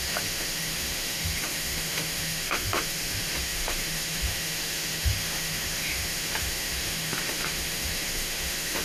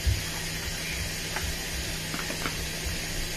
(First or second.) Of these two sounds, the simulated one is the first